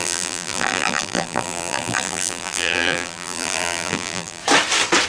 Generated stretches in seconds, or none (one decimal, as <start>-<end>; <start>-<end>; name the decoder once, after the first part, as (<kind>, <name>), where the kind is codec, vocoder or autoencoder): 0.0-4.4 (vocoder, BigVGAN v2)